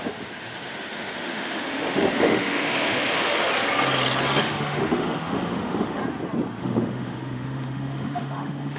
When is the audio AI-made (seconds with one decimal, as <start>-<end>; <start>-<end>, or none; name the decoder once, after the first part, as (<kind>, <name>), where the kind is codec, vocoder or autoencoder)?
0.0-3.5 (autoencoder, DAC-VAE); 4.4-6.0; 6.6-8.8